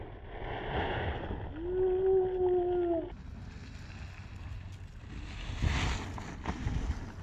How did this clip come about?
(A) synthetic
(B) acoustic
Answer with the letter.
B